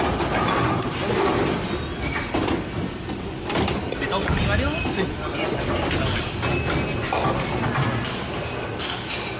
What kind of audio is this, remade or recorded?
recorded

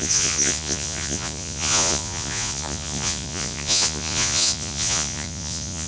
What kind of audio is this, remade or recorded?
remade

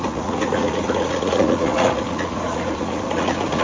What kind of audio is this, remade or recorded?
remade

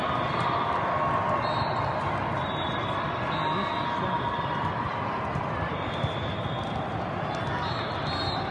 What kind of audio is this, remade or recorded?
recorded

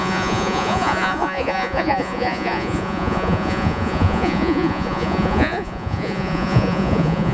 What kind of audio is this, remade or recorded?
remade